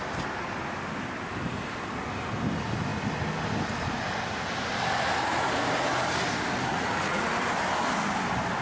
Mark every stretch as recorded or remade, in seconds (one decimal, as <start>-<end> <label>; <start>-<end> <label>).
0.0-6.7 recorded; 6.7-7.2 remade; 7.2-8.6 recorded